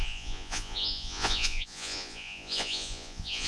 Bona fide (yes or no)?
no